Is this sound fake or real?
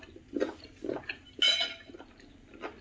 real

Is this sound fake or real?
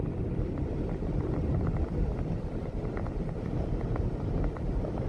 real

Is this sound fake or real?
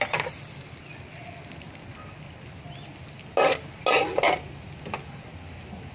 real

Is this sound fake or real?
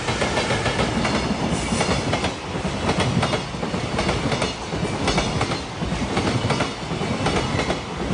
real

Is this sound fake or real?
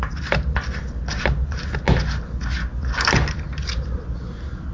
real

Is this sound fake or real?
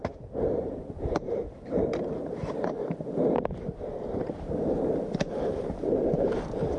fake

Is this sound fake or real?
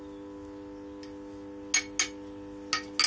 real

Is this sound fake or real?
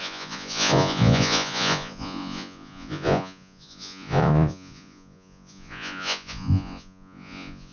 fake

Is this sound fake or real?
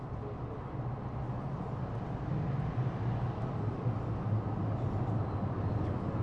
real